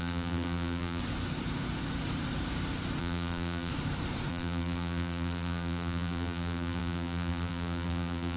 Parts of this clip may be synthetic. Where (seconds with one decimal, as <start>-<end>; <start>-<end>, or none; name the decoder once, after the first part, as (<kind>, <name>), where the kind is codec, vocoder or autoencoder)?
0.0-1.0 (vocoder, BigVGAN v2); 3.0-3.7; 4.3-8.4